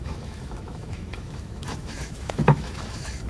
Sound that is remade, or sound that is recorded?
remade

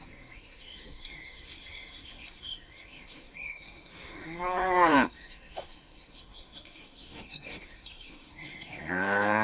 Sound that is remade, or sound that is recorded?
remade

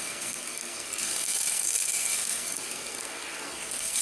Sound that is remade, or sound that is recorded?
remade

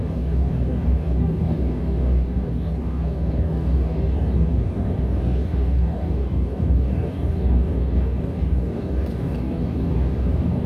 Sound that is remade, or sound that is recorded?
remade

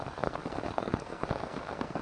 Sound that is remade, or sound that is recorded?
remade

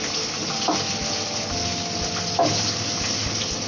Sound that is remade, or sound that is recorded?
recorded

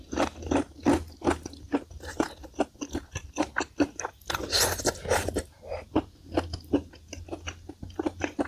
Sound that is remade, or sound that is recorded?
recorded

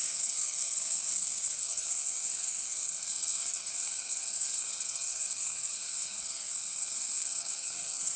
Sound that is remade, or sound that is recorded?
remade